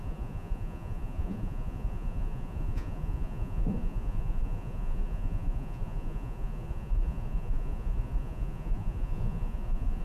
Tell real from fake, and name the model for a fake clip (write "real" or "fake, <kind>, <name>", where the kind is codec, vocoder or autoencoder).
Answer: fake, vocoder, Vocos